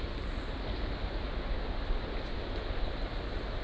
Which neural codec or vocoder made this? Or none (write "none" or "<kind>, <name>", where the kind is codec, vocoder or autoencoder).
none